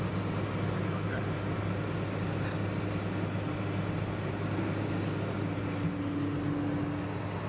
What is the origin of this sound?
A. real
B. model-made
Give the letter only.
A